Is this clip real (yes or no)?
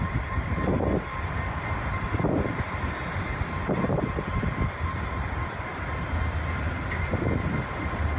yes